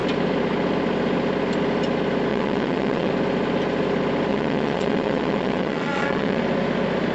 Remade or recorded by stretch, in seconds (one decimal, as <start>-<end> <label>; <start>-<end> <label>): 0.0-2.3 recorded; 2.3-3.1 remade; 3.1-4.3 recorded; 4.3-6.4 remade; 6.4-7.1 recorded